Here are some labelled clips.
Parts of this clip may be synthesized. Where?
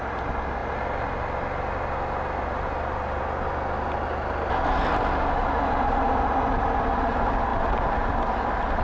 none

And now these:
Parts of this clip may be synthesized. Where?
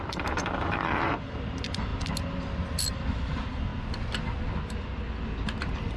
0.0-1.9; 2.9-3.7; 5.6-6.0